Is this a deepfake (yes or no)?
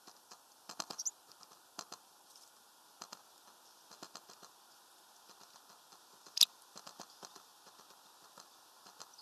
no